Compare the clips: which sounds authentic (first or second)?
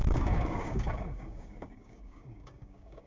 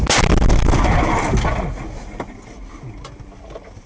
second